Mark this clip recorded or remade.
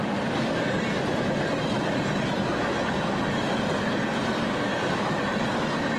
recorded